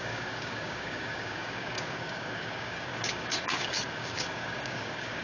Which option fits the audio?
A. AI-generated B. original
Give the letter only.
A